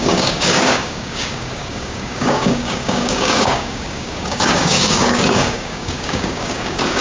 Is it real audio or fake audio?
fake